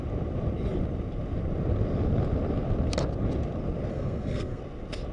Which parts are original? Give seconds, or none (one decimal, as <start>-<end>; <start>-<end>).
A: 0.0-3.9; 4.6-5.1